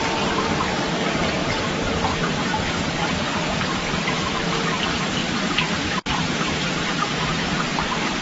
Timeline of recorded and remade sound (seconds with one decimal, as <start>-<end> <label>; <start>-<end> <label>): 0.0-5.2 recorded; 5.2-7.6 remade; 7.6-8.2 recorded